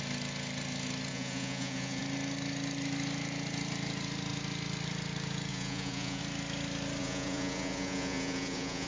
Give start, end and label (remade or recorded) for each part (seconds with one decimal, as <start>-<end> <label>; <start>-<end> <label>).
0.0-1.1 recorded; 1.1-2.0 remade; 2.0-5.5 recorded; 5.5-6.2 remade; 6.2-7.0 recorded; 7.0-8.9 remade